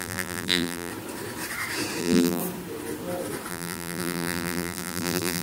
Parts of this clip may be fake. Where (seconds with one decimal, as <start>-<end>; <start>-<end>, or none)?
0.0-0.9; 2.0-2.4; 3.5-5.4